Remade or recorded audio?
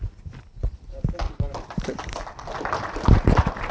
recorded